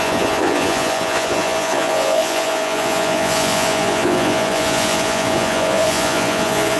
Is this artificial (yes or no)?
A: yes